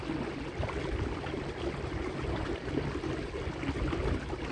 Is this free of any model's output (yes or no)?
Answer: yes